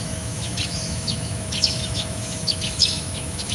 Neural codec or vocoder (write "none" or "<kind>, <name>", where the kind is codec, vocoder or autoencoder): autoencoder, DAC-VAE